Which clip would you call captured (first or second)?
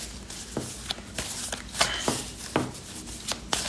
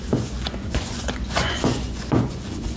first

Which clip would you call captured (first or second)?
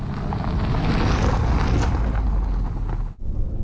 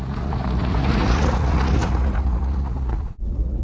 first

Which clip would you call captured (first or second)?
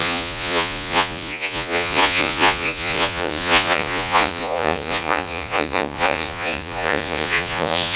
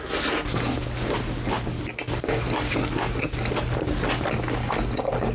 second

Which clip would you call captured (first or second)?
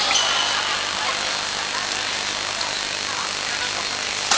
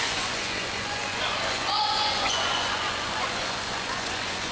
first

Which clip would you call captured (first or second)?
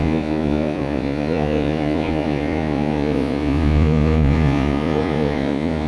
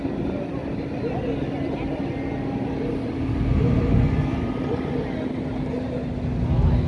second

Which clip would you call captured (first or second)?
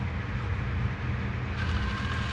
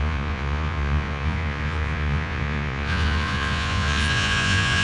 first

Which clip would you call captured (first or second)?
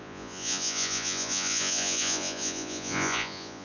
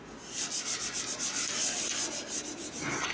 second